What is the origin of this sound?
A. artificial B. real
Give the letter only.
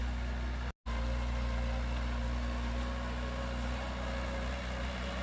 B